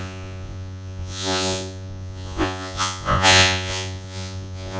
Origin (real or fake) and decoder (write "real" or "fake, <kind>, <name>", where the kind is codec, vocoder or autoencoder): fake, vocoder, Vocos